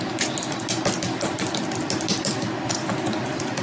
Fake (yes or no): no